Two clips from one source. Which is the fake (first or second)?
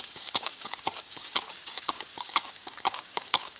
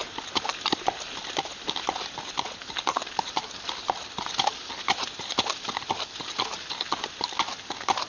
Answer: first